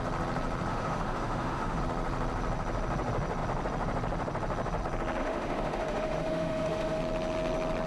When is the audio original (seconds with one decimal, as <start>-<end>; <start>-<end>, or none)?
0.0-0.7; 1.8-5.2; 7.0-7.9